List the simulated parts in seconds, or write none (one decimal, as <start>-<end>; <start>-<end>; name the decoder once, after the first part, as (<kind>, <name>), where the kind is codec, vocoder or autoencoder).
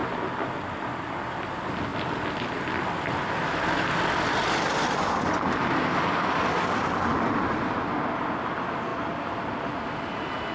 none